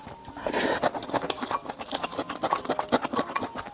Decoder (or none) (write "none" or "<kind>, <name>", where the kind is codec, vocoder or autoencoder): none